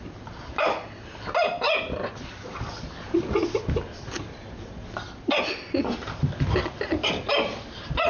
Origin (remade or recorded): recorded